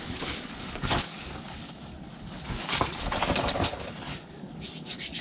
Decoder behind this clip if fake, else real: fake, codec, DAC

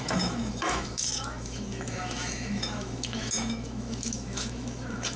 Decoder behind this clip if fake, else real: fake, autoencoder, DAC-VAE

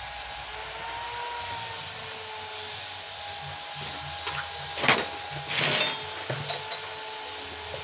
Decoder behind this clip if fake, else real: real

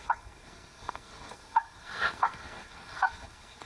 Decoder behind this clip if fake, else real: fake, codec, SNAC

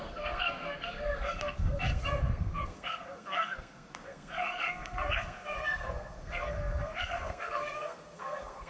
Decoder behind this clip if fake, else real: fake, codec, SNAC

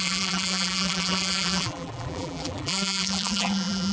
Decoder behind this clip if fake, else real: fake, vocoder, BigVGAN v2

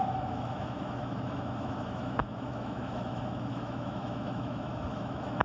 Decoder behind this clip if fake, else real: fake, autoencoder, DAC-VAE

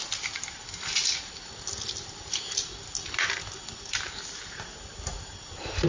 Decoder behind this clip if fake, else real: real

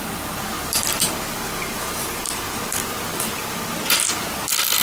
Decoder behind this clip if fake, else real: real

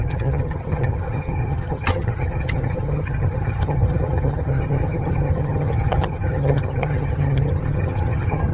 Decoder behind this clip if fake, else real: fake, vocoder, HiFi-GAN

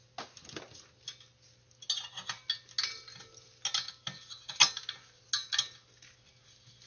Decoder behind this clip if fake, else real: real